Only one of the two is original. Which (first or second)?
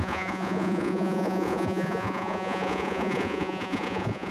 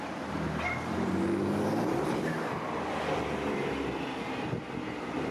second